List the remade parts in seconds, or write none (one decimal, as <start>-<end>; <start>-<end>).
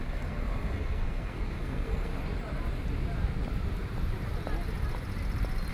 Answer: 0.0-2.1